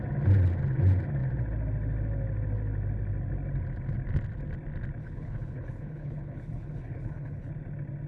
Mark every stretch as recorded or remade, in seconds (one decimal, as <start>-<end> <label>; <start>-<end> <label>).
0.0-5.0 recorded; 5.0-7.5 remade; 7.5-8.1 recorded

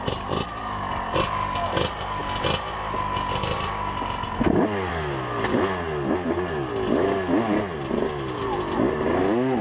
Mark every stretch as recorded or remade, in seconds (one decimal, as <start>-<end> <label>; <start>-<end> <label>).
0.0-9.6 recorded

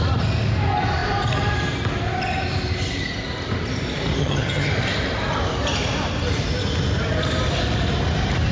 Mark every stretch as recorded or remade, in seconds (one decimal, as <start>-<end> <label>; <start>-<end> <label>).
0.0-4.2 recorded; 4.2-4.7 remade; 4.7-8.5 recorded